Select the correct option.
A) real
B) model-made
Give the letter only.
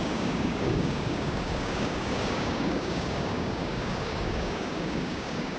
B